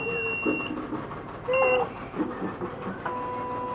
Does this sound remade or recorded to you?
recorded